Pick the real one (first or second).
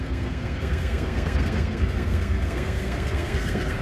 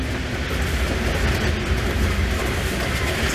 second